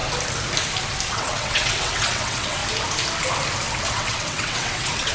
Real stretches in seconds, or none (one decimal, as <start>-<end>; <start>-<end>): 0.0-1.1; 2.6-3.9